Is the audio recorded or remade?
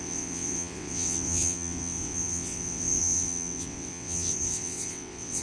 remade